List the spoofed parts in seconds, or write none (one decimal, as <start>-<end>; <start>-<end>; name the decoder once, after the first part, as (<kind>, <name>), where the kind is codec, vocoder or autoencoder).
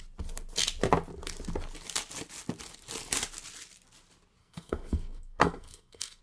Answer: 4.4-6.2 (codec, SNAC)